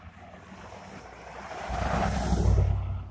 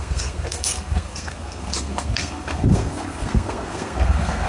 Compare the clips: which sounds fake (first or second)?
second